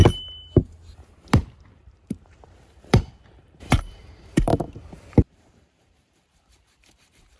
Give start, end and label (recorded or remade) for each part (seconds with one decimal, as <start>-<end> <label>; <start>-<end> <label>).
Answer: 0.0-1.7 recorded; 1.7-4.5 remade; 4.5-5.1 recorded; 5.1-7.4 remade